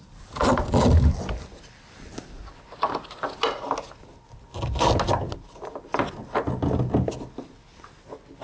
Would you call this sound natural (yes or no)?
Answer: yes